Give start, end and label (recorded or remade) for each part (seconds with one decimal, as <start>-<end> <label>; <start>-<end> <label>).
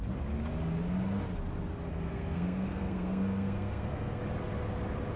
0.0-1.9 recorded; 1.9-4.2 remade; 4.2-5.2 recorded